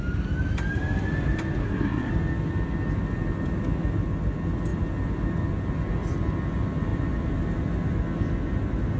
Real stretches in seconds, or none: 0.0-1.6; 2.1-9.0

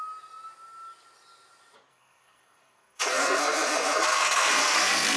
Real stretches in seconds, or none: 0.0-1.9

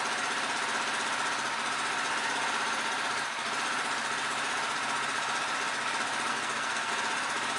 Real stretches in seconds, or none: 0.0-6.3; 6.9-7.6

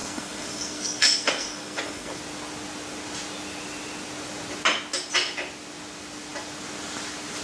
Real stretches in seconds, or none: 2.2-7.4

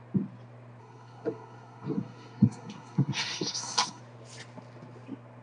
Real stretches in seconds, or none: 0.0-0.8; 4.0-5.4

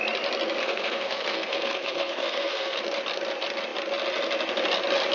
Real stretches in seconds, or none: 0.0-0.6; 2.8-5.1

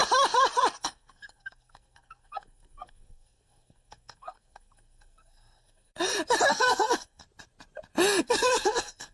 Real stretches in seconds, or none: 0.0-0.8; 5.9-6.5; 7.2-8.2

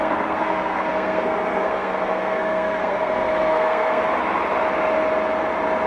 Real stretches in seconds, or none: 4.0-5.9